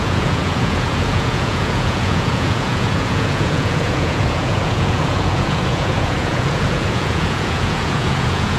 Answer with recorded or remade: remade